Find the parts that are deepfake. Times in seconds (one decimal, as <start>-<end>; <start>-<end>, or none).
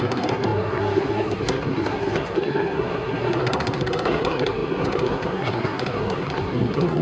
0.0-7.0